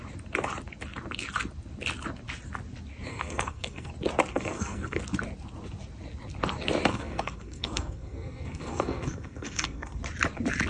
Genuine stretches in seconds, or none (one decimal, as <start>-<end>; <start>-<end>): 0.0-3.1; 3.9-4.3; 5.0-6.9; 10.0-10.7

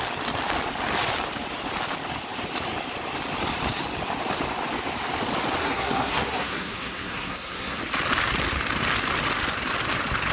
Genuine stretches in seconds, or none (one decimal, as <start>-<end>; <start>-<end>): 0.0-5.6; 7.8-10.3

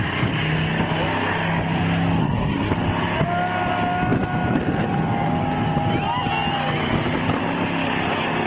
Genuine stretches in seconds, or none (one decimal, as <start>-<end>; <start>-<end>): 0.0-2.2; 2.7-8.5

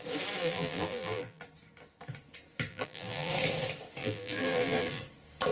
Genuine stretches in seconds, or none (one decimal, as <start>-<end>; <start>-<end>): 0.0-0.4; 1.4-2.7; 3.3-4.0; 5.0-5.5

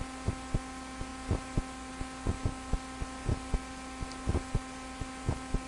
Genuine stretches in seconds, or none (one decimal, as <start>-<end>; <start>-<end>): 0.0-5.7